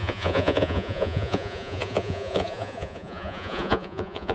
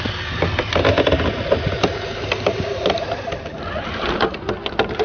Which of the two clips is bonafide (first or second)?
second